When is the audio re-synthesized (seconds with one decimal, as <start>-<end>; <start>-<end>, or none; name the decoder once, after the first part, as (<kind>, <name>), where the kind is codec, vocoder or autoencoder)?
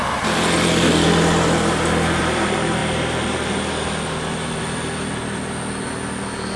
none